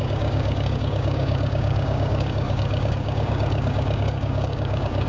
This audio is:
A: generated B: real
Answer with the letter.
A